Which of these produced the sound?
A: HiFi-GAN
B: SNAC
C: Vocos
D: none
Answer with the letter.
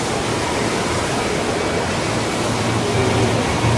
D